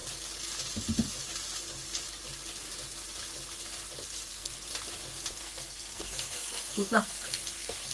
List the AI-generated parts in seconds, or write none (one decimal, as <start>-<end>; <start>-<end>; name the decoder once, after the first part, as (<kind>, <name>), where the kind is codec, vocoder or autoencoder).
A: 4.3-4.7 (codec, SNAC); 5.3-7.9